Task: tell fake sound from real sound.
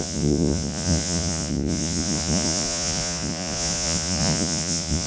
fake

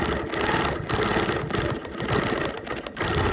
real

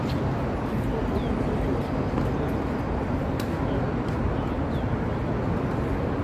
real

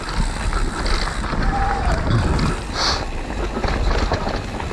real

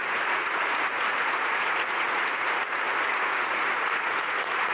fake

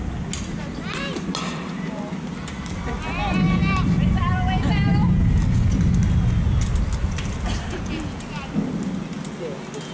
real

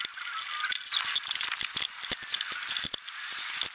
real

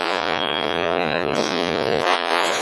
fake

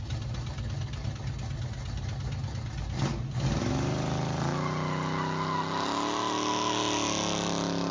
real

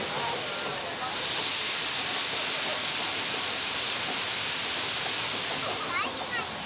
real